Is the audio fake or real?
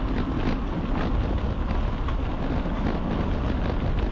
real